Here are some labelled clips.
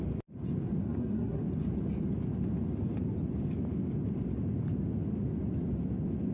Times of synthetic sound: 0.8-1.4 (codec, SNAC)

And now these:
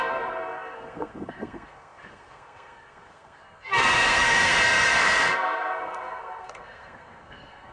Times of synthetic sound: 0.0-7.7 (codec, SNAC)

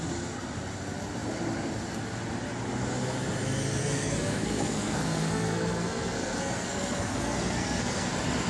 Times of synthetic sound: 3.8-8.1 (codec, SNAC)

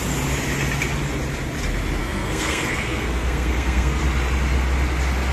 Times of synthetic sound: 2.0-4.0 (codec, SNAC)

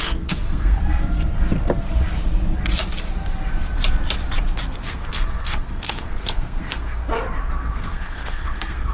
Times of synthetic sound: 0.0-0.8 (codec, SNAC); 4.8-7.0; 7.5-8.9

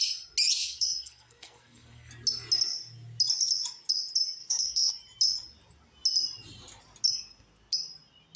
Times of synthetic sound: 0.6-2.1 (codec, SNAC); 4.4-4.9